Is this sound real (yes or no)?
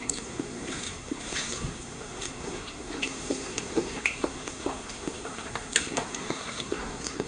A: no